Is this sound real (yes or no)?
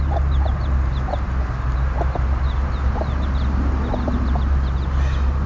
yes